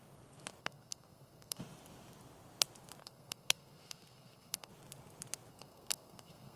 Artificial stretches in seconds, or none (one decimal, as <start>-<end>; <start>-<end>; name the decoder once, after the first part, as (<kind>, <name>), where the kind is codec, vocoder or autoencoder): 0.6-1.6 (codec, SNAC); 3.0-4.7; 5.5-6.6